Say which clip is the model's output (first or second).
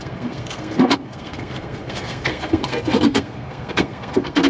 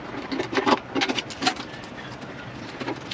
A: first